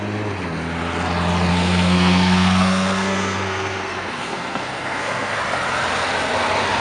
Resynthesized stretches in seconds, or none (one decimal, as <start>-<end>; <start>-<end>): 1.5-5.4